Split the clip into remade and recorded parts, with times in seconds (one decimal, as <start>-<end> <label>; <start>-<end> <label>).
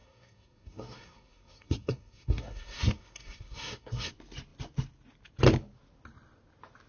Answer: 0.0-4.1 remade; 4.1-6.9 recorded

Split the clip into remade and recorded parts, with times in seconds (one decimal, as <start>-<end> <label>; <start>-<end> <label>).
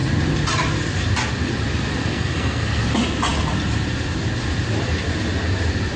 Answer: 0.0-2.0 recorded; 2.0-2.8 remade; 2.8-6.0 recorded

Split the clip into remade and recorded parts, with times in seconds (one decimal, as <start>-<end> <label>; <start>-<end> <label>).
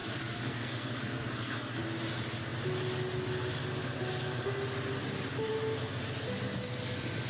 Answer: 0.0-1.8 remade; 1.8-7.3 recorded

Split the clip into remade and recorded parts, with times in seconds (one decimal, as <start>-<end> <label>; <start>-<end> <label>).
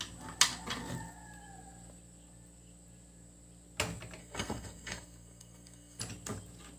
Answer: 0.0-4.2 recorded; 4.2-6.0 remade; 6.0-6.8 recorded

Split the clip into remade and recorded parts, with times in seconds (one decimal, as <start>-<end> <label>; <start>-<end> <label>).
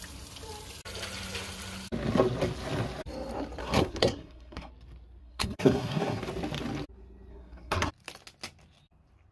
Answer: 0.0-3.6 recorded; 3.6-4.7 remade; 4.7-5.2 recorded; 5.2-6.2 remade; 6.2-7.3 recorded; 7.3-7.9 remade; 7.9-9.3 recorded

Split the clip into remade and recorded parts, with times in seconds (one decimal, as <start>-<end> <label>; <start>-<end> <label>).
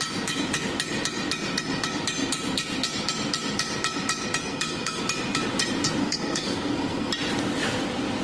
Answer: 0.0-4.4 recorded; 4.4-5.0 remade; 5.0-6.0 recorded; 6.0-7.1 remade; 7.1-8.2 recorded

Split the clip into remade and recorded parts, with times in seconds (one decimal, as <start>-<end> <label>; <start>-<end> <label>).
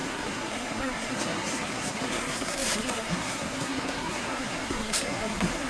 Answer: 0.0-5.7 remade